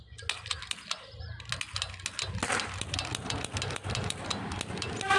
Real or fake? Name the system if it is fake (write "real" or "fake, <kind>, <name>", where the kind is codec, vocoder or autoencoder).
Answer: real